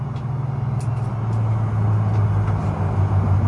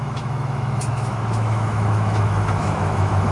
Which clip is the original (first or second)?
first